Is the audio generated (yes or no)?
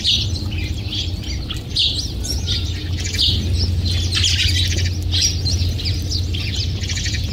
no